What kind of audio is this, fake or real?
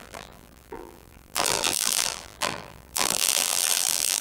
fake